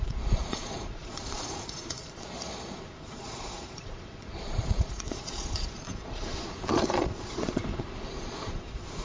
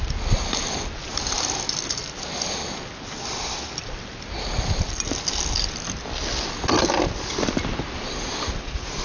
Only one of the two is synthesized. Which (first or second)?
first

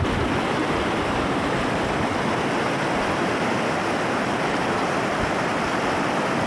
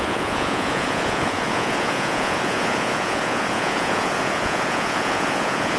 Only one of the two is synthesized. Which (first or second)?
second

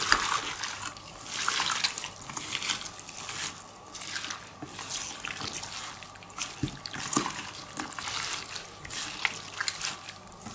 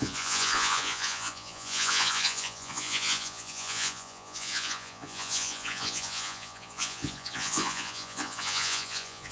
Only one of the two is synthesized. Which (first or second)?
second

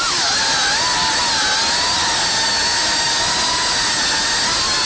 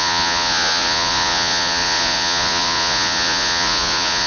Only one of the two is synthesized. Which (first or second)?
second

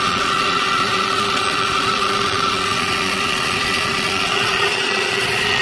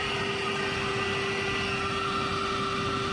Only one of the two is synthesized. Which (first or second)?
first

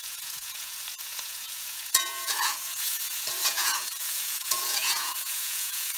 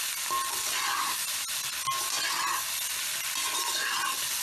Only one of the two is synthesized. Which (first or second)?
first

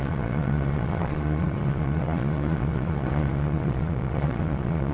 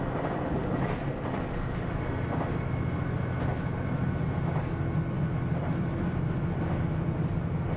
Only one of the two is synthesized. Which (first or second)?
first